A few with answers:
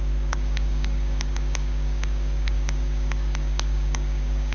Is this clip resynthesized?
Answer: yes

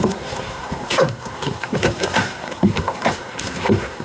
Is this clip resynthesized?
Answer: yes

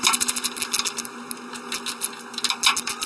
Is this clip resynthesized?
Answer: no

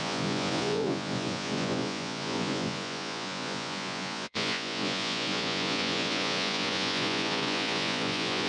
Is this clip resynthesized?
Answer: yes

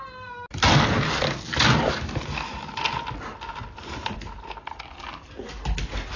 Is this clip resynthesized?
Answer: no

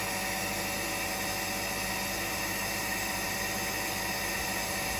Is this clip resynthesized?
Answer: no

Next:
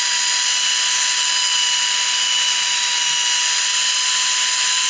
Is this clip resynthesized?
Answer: no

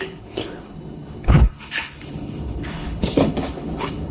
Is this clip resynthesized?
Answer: yes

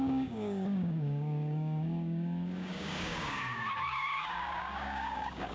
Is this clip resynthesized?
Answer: yes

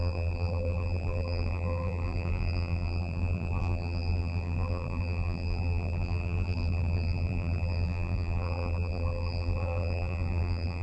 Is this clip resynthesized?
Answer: yes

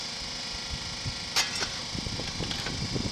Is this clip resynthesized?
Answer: no